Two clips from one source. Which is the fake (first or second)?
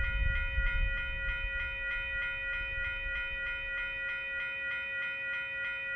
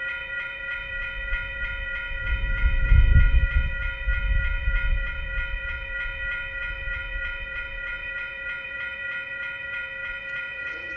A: second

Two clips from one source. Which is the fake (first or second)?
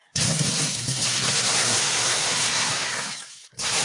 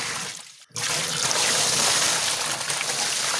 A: first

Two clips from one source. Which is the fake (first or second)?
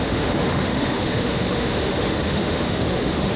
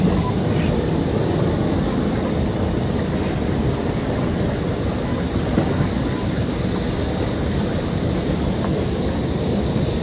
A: first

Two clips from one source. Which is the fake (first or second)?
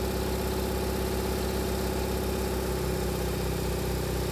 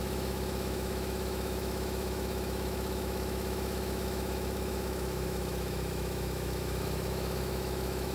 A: second